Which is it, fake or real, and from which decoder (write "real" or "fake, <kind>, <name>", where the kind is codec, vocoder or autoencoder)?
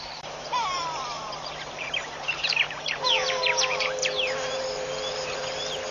fake, vocoder, BigVGAN v2